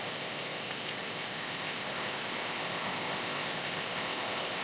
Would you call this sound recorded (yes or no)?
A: no